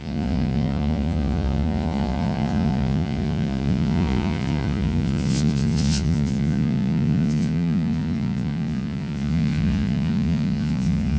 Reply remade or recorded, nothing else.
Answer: remade